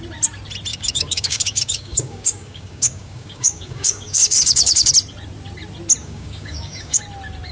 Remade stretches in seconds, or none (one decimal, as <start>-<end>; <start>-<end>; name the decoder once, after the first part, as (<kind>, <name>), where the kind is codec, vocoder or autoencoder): 0.7-4.9 (codec, DAC); 6.0-7.0